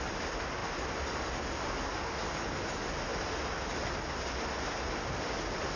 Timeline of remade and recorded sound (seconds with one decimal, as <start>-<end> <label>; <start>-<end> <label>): 0.0-5.8 recorded